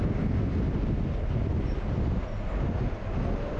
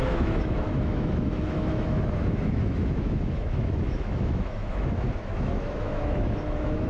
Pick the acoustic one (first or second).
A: first